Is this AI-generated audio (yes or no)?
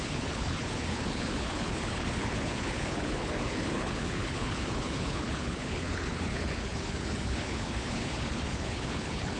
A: yes